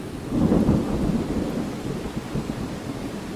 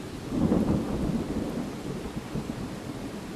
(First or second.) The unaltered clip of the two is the first